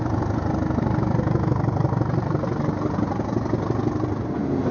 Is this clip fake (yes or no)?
no